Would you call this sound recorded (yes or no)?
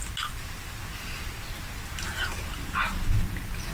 yes